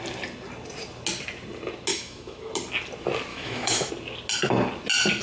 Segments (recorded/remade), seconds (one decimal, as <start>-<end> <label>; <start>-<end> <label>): 0.0-1.9 recorded; 1.9-2.5 remade; 2.5-3.3 recorded; 3.3-3.9 remade; 3.9-5.2 recorded